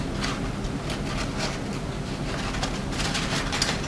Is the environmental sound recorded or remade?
recorded